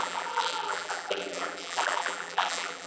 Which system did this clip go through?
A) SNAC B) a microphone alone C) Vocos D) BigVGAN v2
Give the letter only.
D